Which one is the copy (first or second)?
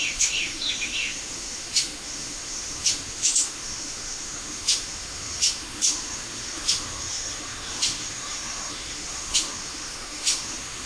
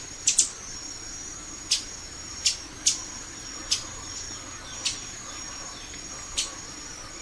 first